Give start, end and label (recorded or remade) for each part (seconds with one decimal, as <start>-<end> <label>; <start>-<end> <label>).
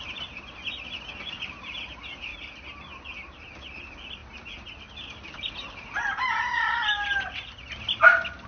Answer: 0.0-8.5 recorded